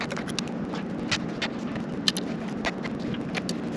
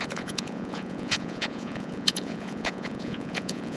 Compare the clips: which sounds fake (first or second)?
second